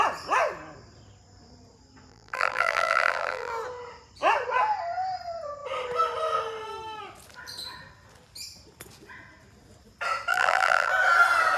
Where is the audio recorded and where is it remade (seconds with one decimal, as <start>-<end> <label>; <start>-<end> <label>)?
0.0-2.1 recorded; 2.1-3.5 remade; 3.5-10.3 recorded; 10.3-10.9 remade; 10.9-11.6 recorded

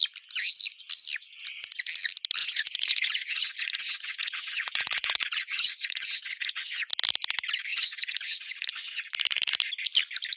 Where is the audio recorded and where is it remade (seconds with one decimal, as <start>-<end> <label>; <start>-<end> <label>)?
0.0-2.4 recorded; 2.4-6.9 remade; 6.9-7.7 recorded; 7.7-9.0 remade; 9.0-10.4 recorded

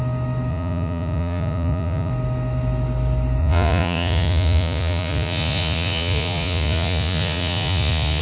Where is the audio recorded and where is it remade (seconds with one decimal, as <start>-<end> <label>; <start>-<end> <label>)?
0.0-0.5 recorded; 0.5-2.1 remade; 2.1-3.4 recorded; 3.4-8.2 remade

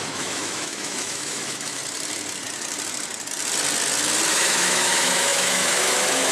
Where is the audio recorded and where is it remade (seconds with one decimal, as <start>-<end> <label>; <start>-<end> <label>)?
0.0-1.8 remade; 1.8-4.3 recorded; 4.3-6.3 remade

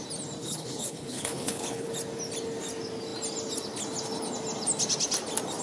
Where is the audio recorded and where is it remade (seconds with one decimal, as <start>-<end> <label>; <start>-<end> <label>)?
0.0-0.4 recorded; 0.4-1.9 remade; 1.9-5.6 recorded

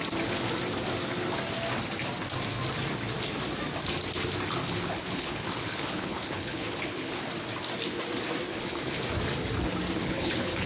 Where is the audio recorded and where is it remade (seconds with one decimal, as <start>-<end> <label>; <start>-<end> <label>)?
0.0-4.6 recorded; 4.6-7.2 remade; 7.2-8.5 recorded; 8.5-9.0 remade; 9.0-10.0 recorded; 10.0-10.7 remade

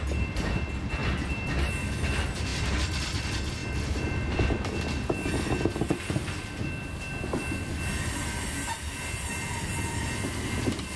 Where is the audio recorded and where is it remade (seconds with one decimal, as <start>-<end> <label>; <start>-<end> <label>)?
0.0-11.0 recorded

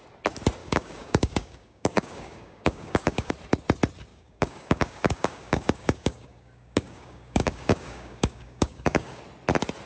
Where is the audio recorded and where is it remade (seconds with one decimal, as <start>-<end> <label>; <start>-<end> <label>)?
0.0-0.6 recorded; 0.6-3.3 remade; 3.3-4.1 recorded; 4.1-9.2 remade; 9.2-9.9 recorded